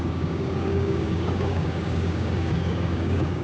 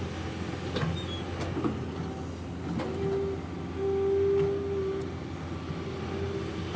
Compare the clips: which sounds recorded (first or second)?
second